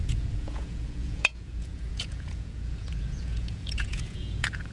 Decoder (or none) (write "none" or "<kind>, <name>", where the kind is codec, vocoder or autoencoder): vocoder, Vocos